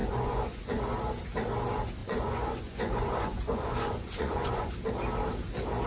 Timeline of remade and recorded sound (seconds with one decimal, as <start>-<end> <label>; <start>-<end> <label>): 0.0-0.8 remade; 0.8-2.0 recorded; 2.0-4.7 remade; 4.7-5.9 recorded